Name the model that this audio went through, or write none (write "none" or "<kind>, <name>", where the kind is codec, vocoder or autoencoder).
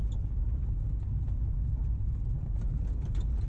none